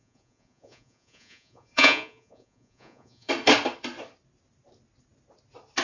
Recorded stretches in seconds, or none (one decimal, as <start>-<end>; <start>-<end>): 3.3-5.8